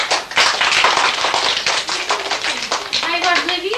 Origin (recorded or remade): recorded